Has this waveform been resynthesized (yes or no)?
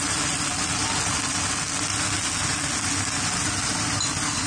no